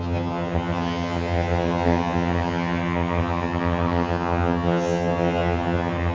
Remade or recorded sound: remade